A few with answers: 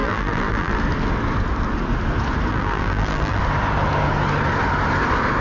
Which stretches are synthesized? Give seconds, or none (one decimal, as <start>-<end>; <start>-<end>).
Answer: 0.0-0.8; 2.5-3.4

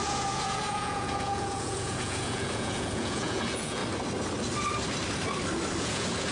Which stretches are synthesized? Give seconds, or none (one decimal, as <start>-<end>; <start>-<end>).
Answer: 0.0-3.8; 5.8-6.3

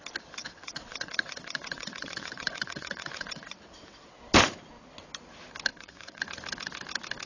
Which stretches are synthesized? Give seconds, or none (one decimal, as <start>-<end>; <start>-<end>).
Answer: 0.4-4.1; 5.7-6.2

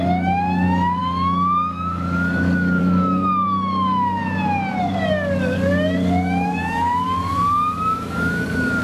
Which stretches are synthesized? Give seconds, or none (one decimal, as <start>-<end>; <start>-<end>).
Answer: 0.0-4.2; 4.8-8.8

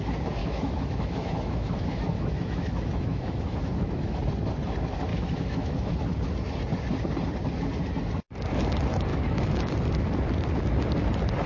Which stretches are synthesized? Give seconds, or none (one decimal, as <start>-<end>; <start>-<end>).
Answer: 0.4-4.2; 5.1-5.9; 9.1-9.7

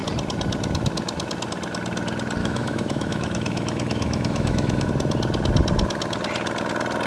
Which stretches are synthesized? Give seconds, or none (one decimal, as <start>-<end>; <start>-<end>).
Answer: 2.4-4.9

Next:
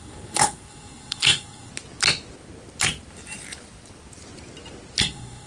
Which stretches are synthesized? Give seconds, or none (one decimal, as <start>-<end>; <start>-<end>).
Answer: 0.0-1.7; 5.0-5.5

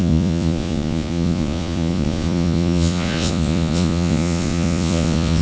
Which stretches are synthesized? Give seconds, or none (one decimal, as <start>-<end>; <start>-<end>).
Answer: 0.0-5.4